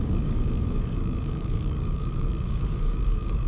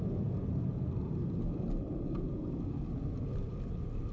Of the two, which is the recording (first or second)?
second